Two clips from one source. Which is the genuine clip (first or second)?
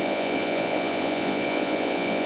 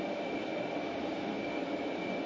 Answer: second